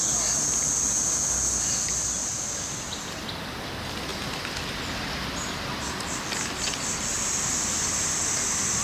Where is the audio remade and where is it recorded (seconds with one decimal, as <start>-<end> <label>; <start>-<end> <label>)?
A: 0.0-8.8 recorded